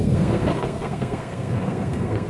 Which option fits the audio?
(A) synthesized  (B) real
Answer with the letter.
A